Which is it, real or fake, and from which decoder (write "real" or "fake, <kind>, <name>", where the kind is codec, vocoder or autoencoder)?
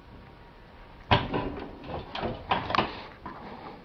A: real